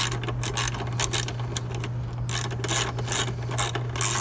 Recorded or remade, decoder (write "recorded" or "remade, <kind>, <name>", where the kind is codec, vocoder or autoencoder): recorded